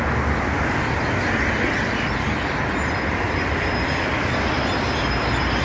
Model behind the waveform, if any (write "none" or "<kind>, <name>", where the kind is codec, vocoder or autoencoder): none